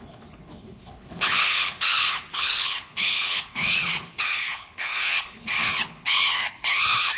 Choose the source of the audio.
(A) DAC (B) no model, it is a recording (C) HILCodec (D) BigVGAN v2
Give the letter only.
C